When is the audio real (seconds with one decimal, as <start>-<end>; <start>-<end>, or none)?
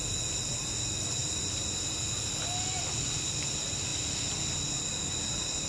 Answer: 0.0-5.7